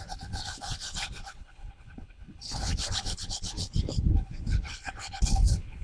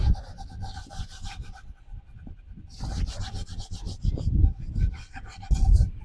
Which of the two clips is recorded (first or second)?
second